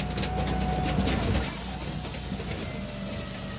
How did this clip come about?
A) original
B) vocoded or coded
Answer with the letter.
A